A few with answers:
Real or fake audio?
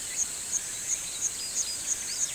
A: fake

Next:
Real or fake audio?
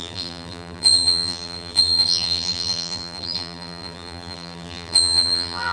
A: fake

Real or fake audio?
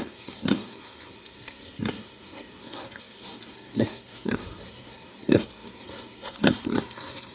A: fake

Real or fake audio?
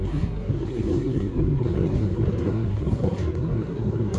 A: fake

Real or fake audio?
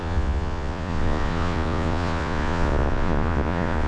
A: fake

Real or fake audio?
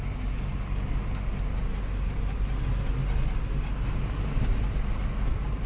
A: real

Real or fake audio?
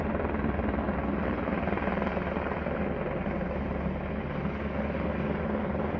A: real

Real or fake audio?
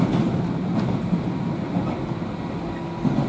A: real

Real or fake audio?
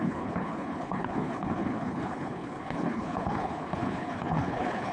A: fake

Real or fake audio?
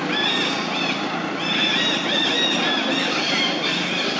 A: real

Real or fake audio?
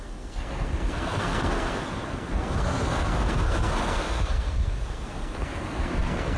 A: fake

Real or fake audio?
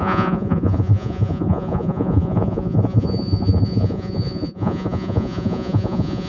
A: fake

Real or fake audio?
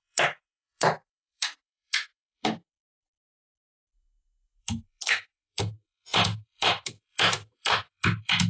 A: fake